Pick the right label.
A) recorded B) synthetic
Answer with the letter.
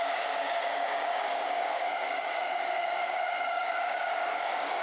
B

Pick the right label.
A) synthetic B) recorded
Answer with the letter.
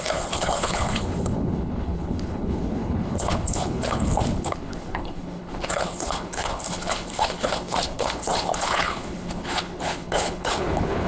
A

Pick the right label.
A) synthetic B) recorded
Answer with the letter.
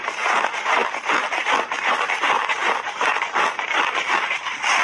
B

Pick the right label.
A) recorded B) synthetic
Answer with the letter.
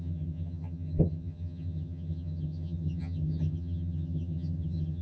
B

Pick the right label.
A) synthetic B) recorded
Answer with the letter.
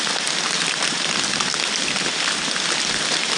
B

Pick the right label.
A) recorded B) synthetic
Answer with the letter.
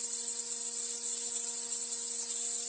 A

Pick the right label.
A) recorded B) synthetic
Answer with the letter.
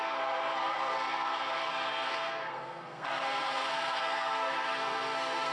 B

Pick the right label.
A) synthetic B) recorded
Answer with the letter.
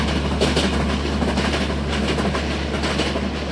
B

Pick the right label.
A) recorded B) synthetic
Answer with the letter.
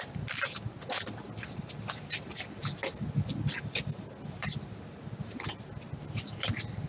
A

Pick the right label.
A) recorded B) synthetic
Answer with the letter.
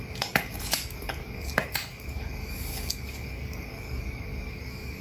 B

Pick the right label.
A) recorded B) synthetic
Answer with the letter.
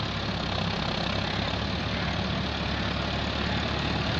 A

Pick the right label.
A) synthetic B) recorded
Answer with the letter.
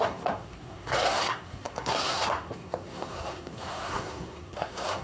A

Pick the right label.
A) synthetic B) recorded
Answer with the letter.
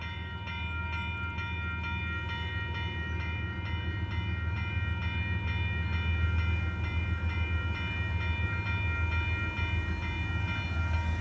B